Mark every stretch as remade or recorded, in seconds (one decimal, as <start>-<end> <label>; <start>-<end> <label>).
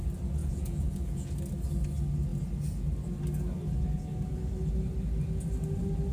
0.0-0.4 recorded; 0.4-1.3 remade; 1.3-6.1 recorded